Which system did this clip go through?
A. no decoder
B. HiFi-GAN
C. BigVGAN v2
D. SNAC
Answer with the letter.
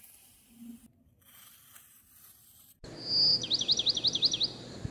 A